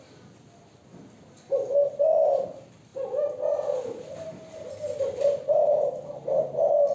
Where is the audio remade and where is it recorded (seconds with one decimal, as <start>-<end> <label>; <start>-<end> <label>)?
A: 0.0-6.9 recorded